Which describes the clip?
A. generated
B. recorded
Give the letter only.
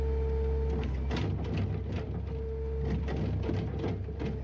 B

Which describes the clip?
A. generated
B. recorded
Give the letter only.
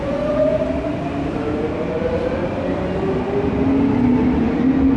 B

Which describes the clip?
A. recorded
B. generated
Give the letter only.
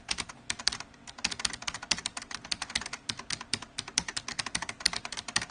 A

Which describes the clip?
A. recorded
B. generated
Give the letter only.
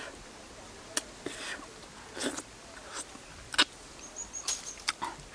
A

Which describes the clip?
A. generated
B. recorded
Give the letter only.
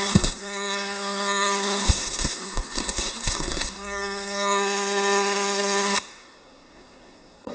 A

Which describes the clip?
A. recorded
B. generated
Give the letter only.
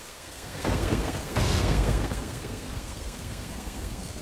B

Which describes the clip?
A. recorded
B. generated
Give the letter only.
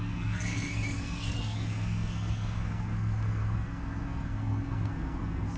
B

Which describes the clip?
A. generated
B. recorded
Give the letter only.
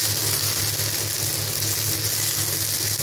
B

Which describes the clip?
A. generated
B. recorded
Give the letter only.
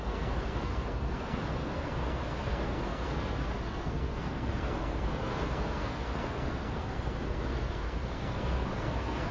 A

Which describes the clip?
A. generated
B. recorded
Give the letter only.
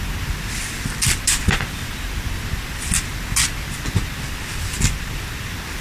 B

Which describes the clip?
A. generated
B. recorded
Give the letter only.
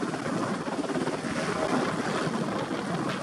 B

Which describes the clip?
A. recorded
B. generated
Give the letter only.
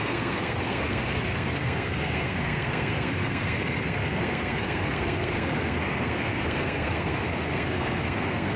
B